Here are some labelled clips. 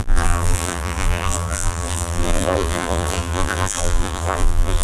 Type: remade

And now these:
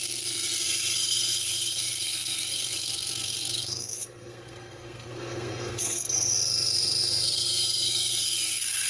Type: remade